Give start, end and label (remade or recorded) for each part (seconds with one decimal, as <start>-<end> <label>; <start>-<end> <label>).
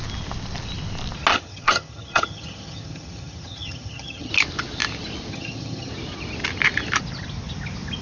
0.0-1.3 recorded; 1.3-4.3 remade; 4.3-5.3 recorded; 5.3-5.9 remade; 5.9-8.0 recorded